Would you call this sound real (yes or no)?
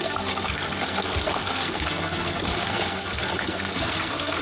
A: no